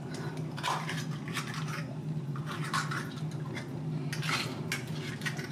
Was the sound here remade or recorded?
recorded